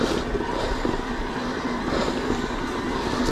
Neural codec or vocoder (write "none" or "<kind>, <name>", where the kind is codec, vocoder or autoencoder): none